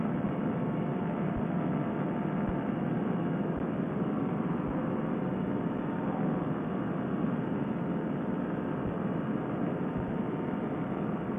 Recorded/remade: recorded